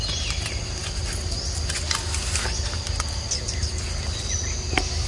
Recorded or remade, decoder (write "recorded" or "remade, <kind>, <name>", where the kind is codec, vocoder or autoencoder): recorded